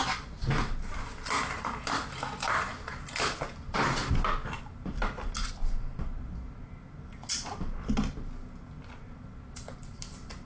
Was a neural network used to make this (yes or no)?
no